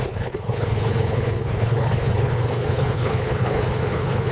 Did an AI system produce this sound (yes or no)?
yes